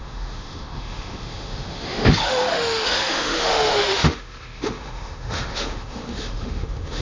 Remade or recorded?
remade